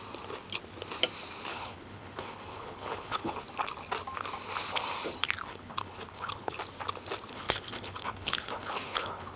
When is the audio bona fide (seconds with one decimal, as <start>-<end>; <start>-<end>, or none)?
0.0-1.5; 3.4-5.5; 6.6-7.3

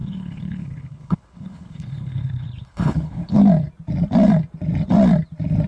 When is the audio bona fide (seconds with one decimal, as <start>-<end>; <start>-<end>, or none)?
3.4-5.7

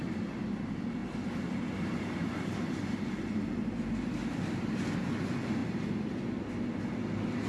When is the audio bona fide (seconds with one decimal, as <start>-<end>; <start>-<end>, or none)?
0.0-7.5

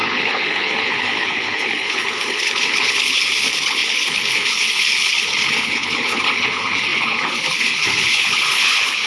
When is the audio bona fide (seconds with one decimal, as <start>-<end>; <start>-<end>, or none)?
none

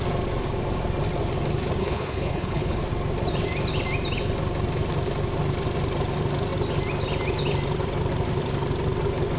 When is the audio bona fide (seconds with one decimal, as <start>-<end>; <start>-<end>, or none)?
0.0-1.8; 2.8-9.4

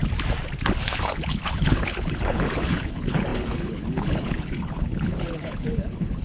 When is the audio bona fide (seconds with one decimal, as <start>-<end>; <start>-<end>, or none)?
0.0-0.8